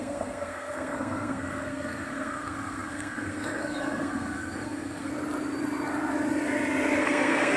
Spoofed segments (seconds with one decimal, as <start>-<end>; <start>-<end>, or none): 0.0-5.1; 7.0-7.6